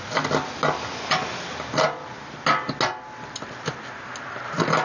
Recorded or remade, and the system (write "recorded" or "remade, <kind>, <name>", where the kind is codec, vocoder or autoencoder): recorded